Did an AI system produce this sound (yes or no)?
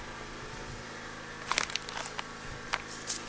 no